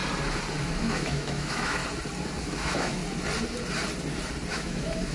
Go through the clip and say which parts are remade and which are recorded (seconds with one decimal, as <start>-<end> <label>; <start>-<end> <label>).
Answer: 0.0-0.6 recorded; 0.6-1.8 remade; 1.8-2.4 recorded; 2.4-3.0 remade; 3.0-4.5 recorded; 4.5-5.1 remade